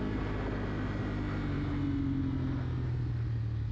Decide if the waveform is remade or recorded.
recorded